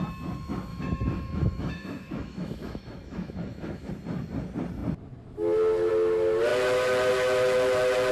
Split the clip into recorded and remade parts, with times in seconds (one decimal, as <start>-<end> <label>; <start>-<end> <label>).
0.0-0.7 recorded; 0.7-3.9 remade; 3.9-8.1 recorded